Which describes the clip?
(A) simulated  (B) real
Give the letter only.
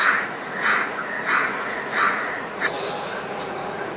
A